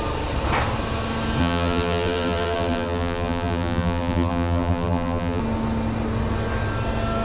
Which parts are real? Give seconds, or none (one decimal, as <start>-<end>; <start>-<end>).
0.0-1.4; 5.4-7.2